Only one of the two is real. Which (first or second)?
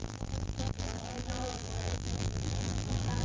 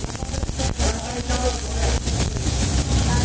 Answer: second